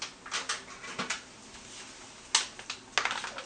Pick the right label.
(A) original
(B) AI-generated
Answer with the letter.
A